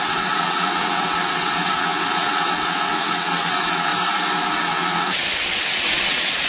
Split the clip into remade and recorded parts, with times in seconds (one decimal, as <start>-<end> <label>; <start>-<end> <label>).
0.0-3.9 remade; 3.9-4.5 recorded; 4.5-6.5 remade